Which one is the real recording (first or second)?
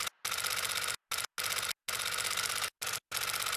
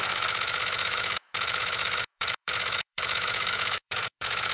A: first